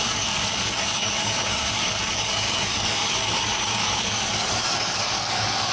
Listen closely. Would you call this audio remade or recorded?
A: remade